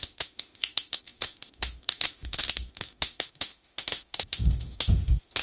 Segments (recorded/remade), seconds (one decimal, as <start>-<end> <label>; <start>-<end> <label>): 0.0-5.4 remade